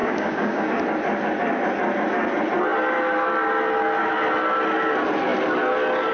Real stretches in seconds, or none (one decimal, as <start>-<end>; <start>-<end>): 0.8-6.1